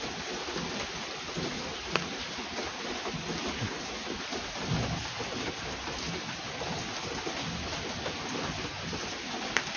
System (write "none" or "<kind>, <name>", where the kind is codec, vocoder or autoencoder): none